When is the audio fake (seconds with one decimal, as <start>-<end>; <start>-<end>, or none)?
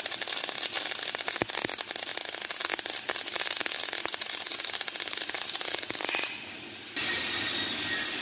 none